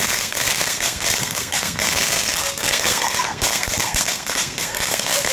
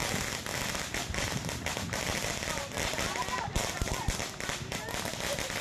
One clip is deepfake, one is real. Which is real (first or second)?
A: second